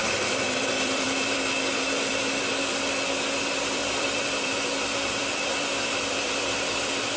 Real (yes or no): no